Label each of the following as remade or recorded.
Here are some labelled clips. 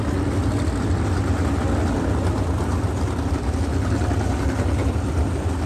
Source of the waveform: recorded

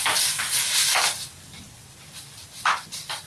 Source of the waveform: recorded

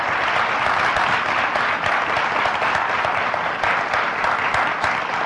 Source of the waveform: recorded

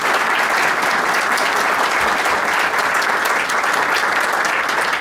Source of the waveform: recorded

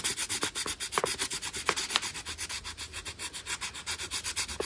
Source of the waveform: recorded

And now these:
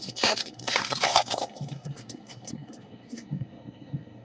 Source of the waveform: remade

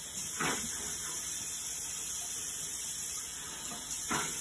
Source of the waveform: recorded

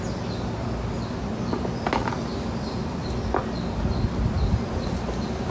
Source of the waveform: recorded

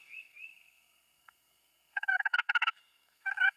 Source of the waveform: remade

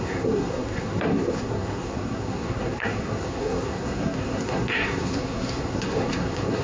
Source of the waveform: remade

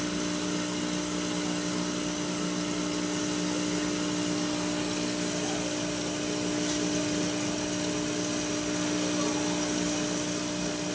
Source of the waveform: recorded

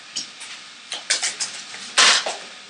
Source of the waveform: recorded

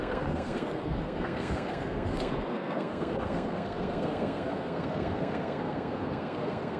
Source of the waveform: remade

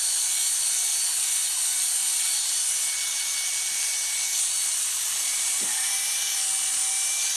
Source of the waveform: recorded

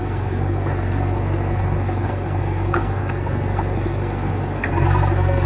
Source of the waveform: remade